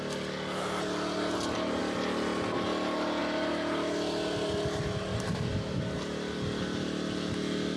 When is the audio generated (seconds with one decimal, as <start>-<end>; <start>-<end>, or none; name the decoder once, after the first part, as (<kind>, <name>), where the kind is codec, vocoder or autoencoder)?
none